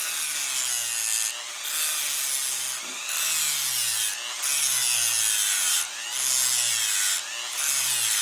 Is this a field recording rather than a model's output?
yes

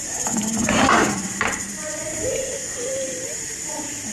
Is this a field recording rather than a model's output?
no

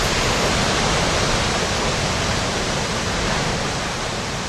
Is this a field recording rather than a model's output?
yes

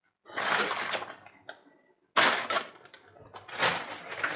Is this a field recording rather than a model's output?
yes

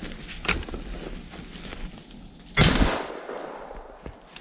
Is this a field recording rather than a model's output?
yes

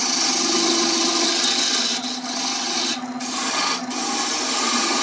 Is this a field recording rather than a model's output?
yes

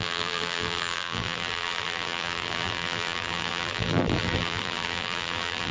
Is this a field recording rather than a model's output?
no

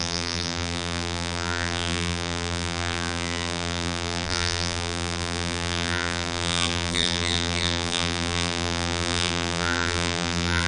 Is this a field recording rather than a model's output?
no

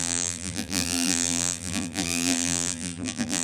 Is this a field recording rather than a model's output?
no